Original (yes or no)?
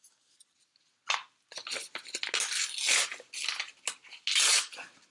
yes